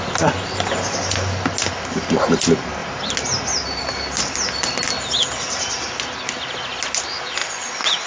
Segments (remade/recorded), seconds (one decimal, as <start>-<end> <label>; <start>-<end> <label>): 0.0-8.1 recorded